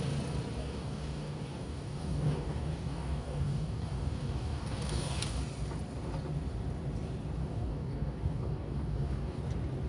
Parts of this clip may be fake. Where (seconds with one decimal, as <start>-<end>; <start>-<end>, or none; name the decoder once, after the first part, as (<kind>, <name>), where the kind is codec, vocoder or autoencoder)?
0.6-5.4 (codec, DAC); 7.4-9.4